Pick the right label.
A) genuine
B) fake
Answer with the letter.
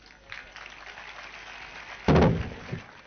A